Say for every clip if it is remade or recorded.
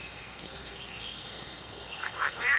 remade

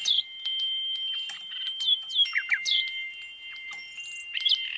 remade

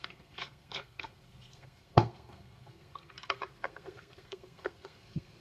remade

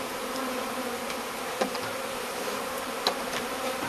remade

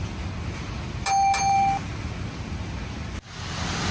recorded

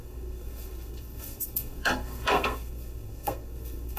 remade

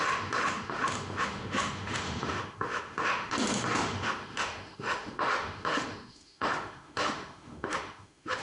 remade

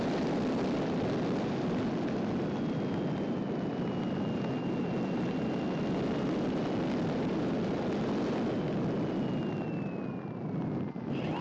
recorded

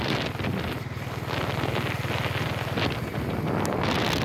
recorded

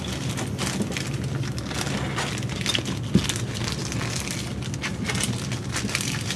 recorded